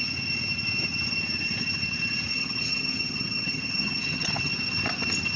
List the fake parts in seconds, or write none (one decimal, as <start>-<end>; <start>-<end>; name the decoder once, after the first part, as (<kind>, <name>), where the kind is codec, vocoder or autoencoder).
2.3-4.5 (vocoder, HiFi-GAN)